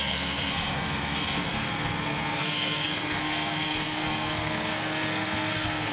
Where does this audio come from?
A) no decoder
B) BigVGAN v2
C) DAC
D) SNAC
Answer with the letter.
D